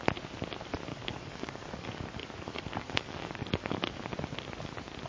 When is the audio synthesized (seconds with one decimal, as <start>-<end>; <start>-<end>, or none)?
0.9-4.0